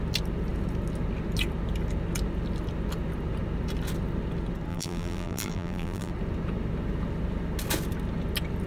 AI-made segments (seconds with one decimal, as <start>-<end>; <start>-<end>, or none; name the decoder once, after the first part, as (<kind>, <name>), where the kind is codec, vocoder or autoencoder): 4.7-6.1 (vocoder, BigVGAN v2)